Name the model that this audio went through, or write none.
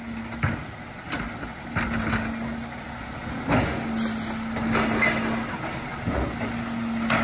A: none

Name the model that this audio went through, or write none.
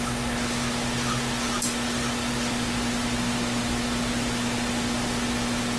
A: none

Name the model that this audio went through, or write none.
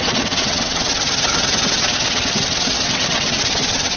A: vocoder, WaveNeXt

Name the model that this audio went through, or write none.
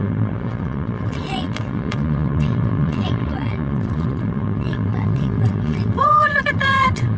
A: vocoder, WaveNeXt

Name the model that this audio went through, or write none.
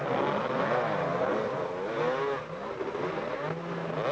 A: none